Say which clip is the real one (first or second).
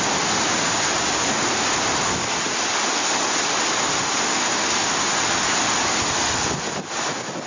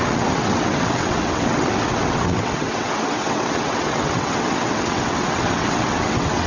first